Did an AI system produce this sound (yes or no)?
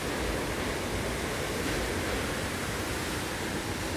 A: no